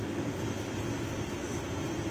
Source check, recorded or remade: recorded